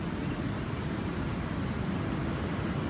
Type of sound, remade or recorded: recorded